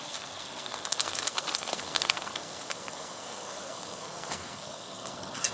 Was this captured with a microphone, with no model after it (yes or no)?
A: no